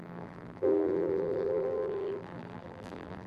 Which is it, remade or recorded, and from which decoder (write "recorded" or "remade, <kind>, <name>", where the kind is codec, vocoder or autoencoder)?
remade, vocoder, BigVGAN v2